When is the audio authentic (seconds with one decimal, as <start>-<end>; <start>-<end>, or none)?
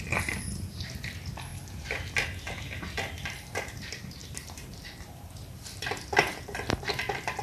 0.0-4.2; 6.9-7.4